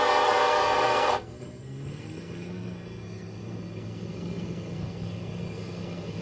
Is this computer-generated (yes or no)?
yes